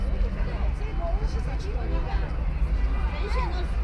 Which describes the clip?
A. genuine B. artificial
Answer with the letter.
A